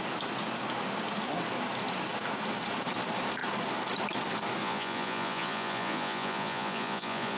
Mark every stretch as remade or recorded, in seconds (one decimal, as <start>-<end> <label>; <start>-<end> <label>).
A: 0.0-4.6 recorded; 4.6-7.4 remade